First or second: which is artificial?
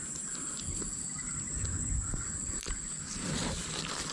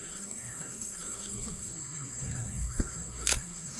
second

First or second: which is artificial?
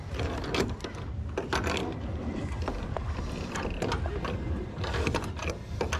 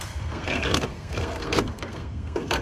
second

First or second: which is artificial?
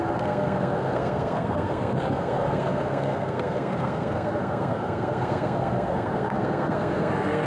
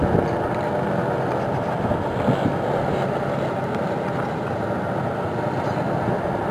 first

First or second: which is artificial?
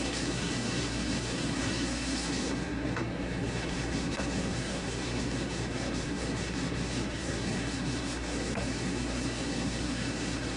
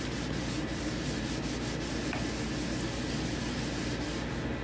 first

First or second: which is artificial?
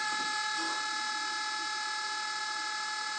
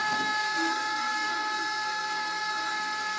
second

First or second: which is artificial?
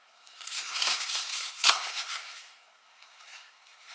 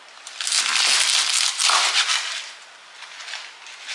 first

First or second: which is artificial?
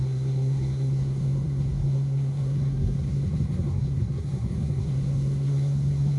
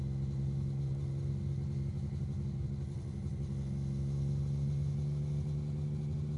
first